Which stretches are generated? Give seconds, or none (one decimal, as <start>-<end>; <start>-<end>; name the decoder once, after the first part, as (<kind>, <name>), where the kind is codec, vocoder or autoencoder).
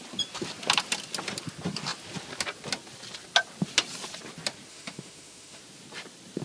4.7-5.6 (autoencoder, DAC-VAE)